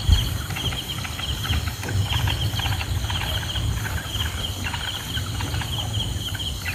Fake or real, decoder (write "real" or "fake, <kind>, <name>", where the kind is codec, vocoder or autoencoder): real